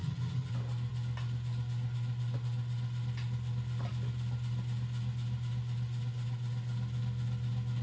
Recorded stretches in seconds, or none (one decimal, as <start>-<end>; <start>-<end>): 0.5-7.8